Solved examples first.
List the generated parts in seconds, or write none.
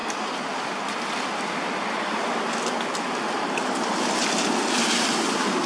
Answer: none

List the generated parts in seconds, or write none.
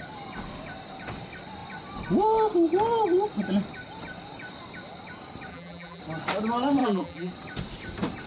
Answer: 5.5-6.0 (vocoder, BigVGAN v2); 6.8-7.3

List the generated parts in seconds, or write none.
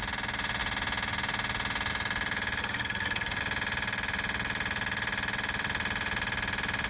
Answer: 2.6-3.4 (codec, SNAC)